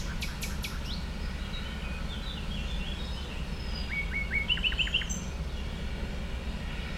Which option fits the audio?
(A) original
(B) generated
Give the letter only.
A